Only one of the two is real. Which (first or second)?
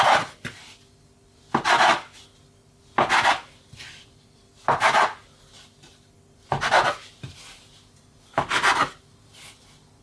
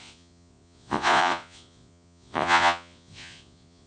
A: first